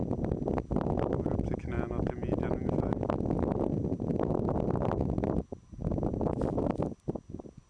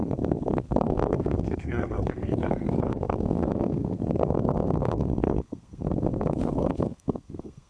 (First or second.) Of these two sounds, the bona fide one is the first